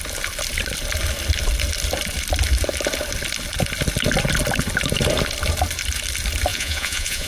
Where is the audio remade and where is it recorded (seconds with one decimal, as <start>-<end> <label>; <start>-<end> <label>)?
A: 0.0-6.5 recorded; 6.5-7.3 remade